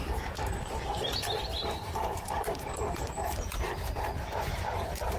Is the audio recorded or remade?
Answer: remade